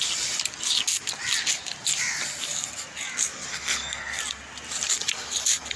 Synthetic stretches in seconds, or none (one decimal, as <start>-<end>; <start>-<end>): 3.5-4.2